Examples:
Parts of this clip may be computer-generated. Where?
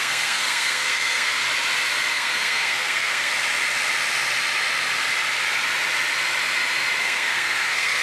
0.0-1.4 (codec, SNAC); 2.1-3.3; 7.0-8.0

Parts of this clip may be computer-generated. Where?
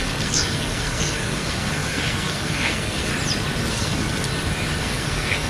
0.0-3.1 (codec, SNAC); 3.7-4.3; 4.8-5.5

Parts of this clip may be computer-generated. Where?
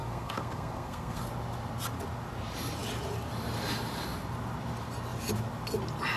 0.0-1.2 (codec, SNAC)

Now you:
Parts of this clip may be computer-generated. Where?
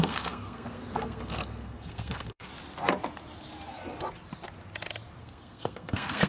0.0-2.5 (codec, SNAC); 5.2-6.3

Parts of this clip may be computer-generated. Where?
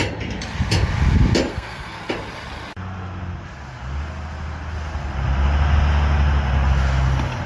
1.5-2.0 (codec, SNAC)